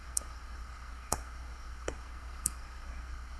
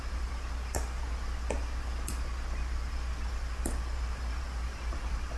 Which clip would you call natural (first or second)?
second